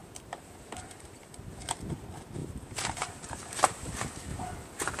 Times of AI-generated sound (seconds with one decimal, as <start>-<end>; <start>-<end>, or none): 0.0-1.5; 2.4-3.9